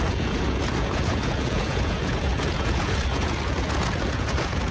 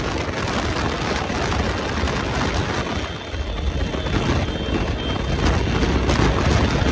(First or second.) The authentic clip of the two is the second